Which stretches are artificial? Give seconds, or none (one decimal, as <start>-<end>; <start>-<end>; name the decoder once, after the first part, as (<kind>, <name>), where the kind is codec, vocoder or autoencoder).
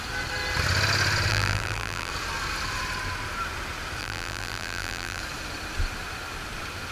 1.3-2.1 (vocoder, BigVGAN v2); 4.0-5.2